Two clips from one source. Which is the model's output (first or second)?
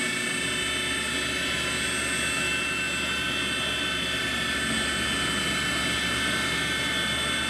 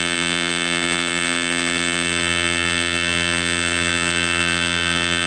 second